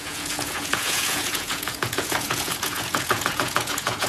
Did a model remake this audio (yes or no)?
yes